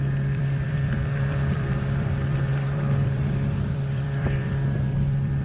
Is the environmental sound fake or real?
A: fake